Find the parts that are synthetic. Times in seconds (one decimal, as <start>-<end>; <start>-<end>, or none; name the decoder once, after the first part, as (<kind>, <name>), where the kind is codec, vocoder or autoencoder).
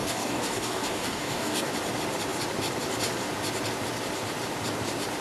0.0-1.7 (codec, DAC)